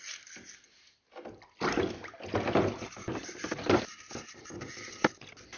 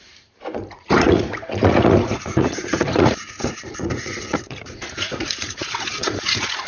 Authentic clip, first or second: first